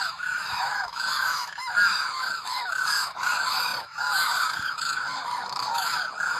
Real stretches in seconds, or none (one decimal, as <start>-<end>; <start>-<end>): none